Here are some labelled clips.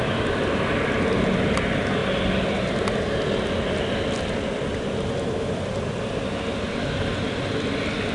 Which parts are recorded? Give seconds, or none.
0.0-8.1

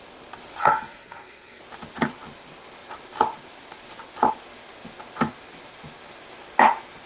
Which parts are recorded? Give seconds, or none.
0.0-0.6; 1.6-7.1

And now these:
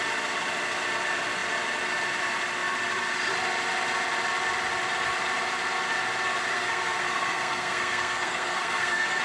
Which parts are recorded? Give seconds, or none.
0.0-6.5

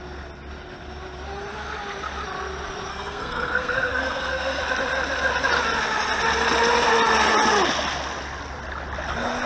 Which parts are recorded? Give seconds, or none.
0.0-2.9; 4.6-9.5

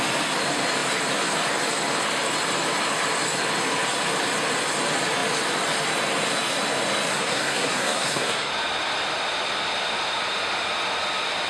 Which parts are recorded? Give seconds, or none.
0.0-7.1; 8.5-11.5

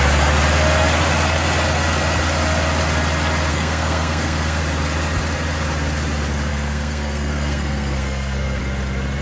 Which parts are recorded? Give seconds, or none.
0.0-3.5; 4.6-6.5; 8.6-9.2